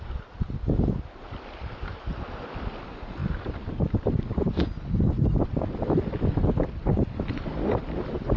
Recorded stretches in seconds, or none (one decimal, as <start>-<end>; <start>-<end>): 0.0-3.2; 4.4-8.4